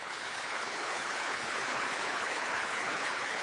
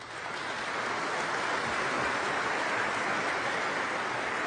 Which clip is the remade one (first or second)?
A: first